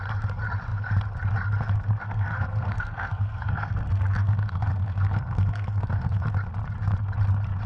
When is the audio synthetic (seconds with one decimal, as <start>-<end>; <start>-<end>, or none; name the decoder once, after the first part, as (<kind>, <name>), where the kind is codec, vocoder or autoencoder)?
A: 2.0-6.3 (codec, SNAC)